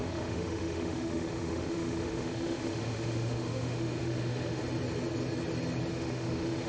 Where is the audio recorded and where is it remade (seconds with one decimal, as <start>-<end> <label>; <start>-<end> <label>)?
0.0-4.6 remade; 4.6-5.9 recorded; 5.9-6.7 remade